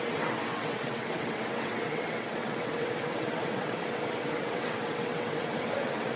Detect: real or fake fake